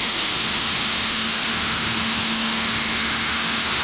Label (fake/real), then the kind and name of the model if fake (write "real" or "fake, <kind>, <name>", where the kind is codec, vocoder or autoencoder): fake, autoencoder, DAC-VAE